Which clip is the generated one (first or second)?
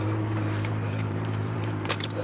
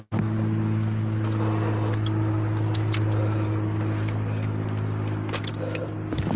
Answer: first